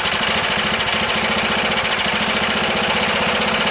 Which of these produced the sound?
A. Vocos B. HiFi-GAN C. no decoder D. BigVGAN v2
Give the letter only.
C